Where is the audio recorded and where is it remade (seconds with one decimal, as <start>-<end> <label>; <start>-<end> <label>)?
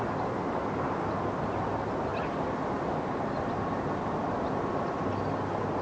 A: 0.0-5.8 recorded